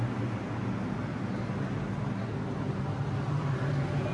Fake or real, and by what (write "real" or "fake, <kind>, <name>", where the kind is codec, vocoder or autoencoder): real